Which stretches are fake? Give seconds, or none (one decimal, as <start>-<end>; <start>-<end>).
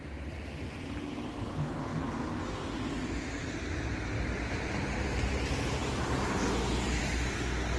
none